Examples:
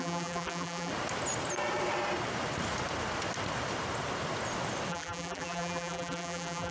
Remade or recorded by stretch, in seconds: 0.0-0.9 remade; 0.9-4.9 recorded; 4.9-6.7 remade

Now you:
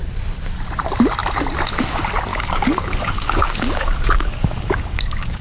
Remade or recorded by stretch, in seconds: 0.0-2.3 recorded; 2.3-5.4 remade

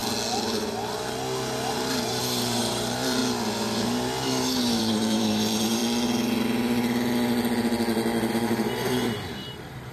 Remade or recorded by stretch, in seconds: 0.0-1.7 recorded; 1.7-3.2 remade; 3.2-3.8 recorded; 3.8-5.8 remade; 5.8-8.3 recorded; 8.3-9.9 remade

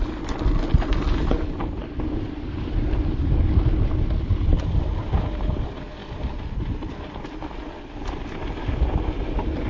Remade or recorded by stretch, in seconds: 0.0-9.7 recorded